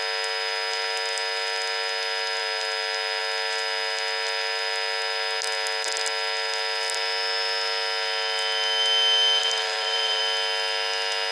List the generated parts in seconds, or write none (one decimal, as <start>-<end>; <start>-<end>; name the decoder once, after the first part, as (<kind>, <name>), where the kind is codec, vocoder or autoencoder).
9.4-10.2 (vocoder, BigVGAN v2)